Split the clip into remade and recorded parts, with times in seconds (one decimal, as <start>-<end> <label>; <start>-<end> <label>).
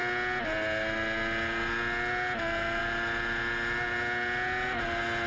0.0-5.3 recorded